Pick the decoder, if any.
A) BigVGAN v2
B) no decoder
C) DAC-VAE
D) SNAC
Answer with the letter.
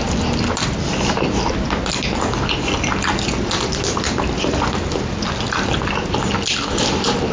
B